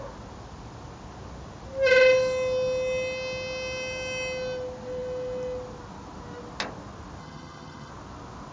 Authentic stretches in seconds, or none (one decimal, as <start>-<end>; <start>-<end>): 0.0-7.2; 7.9-8.5